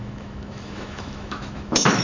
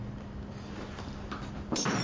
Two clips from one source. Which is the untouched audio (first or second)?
second